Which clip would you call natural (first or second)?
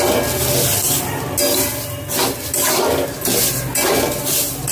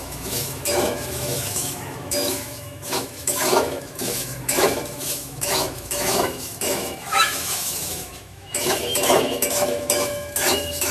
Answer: first